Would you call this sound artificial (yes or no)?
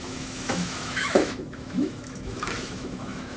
yes